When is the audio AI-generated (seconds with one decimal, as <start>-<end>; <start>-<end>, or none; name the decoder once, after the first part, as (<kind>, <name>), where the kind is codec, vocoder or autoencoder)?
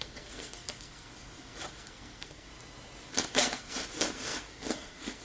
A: 0.0-2.5 (codec, SNAC); 3.1-5.2